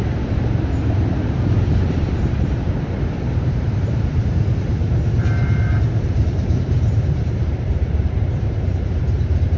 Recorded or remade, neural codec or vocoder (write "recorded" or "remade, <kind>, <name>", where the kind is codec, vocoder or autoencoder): remade, vocoder, BigVGAN v2